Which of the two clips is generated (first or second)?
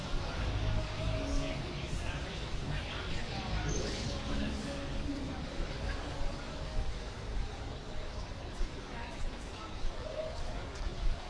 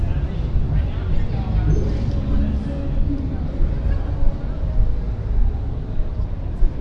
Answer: first